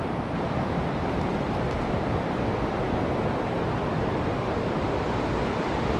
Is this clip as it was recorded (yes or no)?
yes